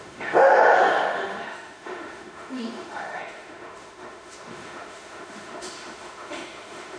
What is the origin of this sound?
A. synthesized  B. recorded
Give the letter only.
A